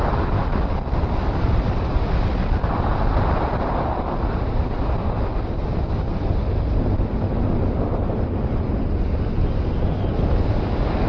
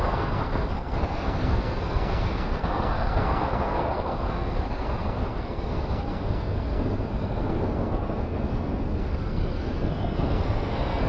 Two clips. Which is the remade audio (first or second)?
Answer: second